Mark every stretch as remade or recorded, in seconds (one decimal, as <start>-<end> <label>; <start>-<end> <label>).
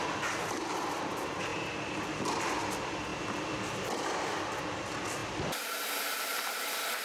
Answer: 0.0-7.0 recorded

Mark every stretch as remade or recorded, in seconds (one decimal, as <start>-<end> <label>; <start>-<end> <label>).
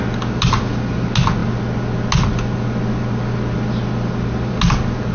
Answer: 0.0-5.1 recorded